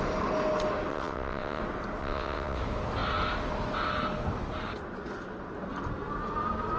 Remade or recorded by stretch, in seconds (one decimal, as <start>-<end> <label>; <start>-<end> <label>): 0.0-0.9 recorded; 0.9-1.6 remade; 1.6-2.0 recorded; 2.0-2.6 remade; 2.6-6.8 recorded